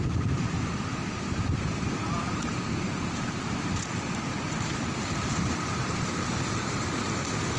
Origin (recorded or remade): remade